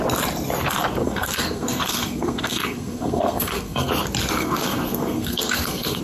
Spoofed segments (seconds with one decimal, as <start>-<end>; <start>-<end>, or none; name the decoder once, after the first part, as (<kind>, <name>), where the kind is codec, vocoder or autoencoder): 1.0-3.9 (codec, SNAC); 4.4-6.0

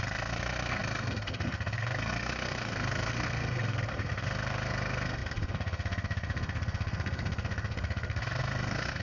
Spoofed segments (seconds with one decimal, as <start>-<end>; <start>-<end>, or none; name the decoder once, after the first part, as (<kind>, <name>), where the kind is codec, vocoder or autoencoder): 0.0-9.0 (codec, SNAC)

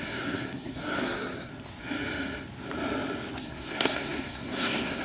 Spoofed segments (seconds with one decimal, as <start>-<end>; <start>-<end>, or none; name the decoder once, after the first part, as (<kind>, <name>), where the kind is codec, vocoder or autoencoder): 0.0-1.5 (codec, SNAC); 3.4-5.0

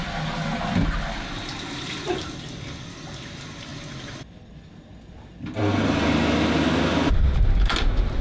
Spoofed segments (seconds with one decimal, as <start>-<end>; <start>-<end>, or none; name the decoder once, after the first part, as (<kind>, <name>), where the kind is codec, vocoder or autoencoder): none

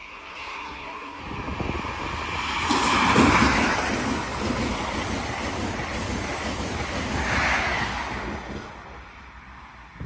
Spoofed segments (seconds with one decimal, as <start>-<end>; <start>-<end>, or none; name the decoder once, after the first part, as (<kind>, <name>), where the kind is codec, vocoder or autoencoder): 0.0-1.2 (codec, SNAC)

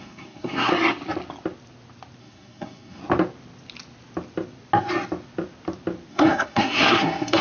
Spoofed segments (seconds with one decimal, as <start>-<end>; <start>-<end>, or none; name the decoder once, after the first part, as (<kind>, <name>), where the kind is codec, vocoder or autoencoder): 0.0-0.7 (codec, SNAC); 2.2-3.0; 6.1-7.4

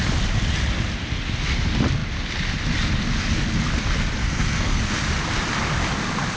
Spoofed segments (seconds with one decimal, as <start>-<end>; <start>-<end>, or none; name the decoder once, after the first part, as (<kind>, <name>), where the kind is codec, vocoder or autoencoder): 4.2-4.8 (codec, SNAC)

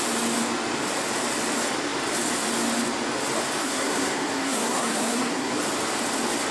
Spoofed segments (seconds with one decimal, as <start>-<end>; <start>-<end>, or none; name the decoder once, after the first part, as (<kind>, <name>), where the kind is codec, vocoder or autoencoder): 3.6-5.5 (codec, SNAC)